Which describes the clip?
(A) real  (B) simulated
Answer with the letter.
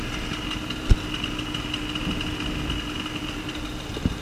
A